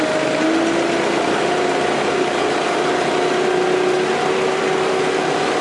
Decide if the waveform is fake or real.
real